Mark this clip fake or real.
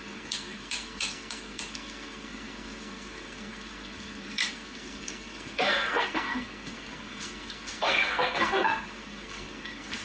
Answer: fake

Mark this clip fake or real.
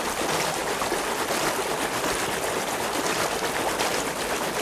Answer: real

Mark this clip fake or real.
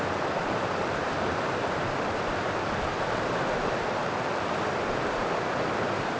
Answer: real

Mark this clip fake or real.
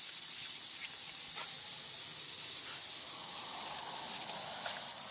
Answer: real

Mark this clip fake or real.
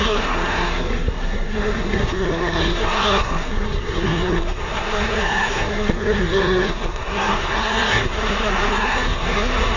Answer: fake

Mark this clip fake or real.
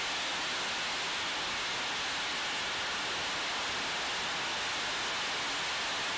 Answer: real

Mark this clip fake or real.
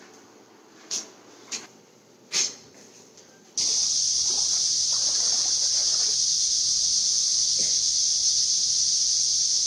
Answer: real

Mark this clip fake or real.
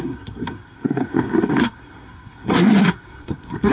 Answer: fake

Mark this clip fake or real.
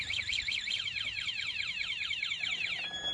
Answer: real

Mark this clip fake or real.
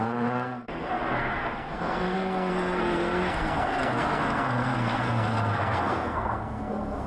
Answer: fake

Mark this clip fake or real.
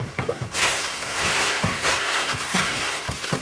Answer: fake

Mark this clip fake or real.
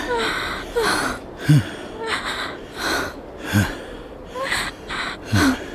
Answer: real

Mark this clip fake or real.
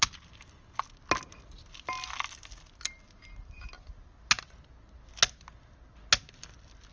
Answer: real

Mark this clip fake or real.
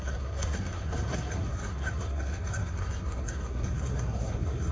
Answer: fake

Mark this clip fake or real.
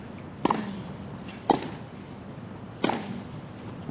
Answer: real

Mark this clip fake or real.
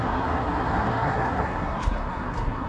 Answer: fake